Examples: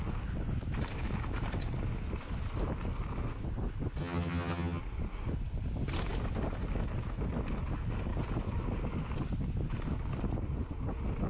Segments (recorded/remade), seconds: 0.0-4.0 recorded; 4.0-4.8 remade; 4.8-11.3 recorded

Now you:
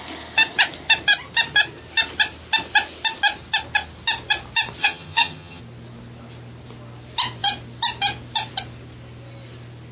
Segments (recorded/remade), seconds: 0.0-4.8 recorded; 4.8-5.6 remade; 5.6-9.9 recorded

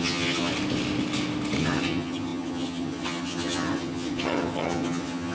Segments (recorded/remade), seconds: 0.0-0.5 remade; 0.5-1.6 recorded; 1.6-5.3 remade